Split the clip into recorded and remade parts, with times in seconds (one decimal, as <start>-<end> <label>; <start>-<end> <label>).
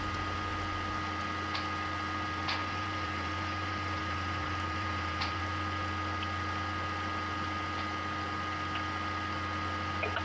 0.0-2.6 recorded; 2.6-5.4 remade; 5.4-10.2 recorded